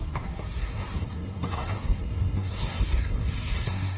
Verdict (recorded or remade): remade